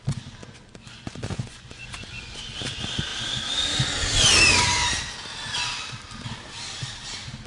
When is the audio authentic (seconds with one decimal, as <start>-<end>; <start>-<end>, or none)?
0.0-0.4; 2.4-7.5

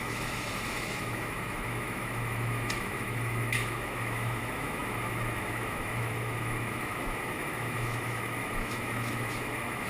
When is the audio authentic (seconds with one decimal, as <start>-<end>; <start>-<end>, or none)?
none

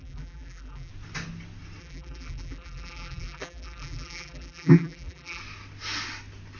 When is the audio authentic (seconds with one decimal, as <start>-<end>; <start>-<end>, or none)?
0.9-1.8; 5.4-6.6

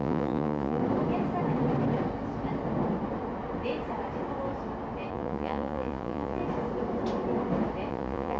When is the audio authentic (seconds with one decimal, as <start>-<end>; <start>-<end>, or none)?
0.8-5.1; 6.4-7.9

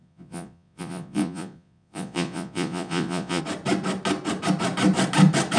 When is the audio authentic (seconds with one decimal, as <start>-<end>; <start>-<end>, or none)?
3.4-5.6

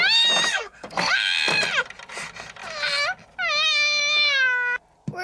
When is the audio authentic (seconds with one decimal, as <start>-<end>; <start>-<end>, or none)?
0.0-0.5; 1.1-5.2